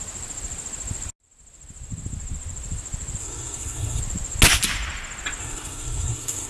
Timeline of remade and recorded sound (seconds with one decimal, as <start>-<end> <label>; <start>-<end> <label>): 0.0-3.2 recorded; 3.2-4.0 remade; 4.0-5.4 recorded; 5.4-6.5 remade